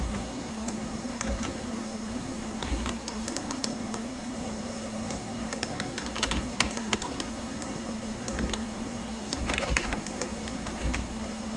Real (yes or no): no